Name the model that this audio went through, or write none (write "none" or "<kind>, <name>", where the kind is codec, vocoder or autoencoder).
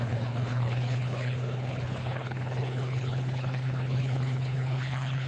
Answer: codec, HILCodec